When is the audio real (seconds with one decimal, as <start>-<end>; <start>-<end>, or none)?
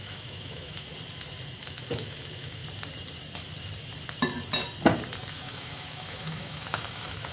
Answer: 0.9-1.6; 2.6-5.4